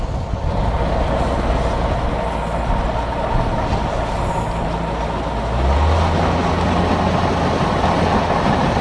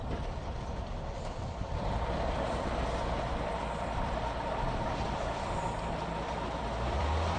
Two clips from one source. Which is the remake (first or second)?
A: second